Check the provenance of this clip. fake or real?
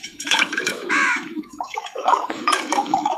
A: fake